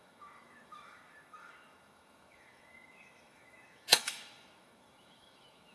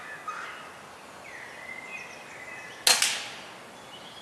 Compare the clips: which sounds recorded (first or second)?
second